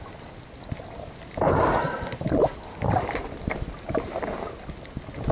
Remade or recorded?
recorded